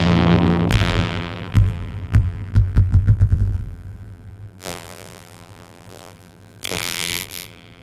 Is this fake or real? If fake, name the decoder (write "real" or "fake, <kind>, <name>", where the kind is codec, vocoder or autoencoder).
fake, vocoder, BigVGAN v2